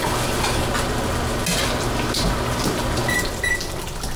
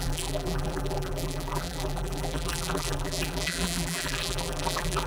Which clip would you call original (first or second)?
first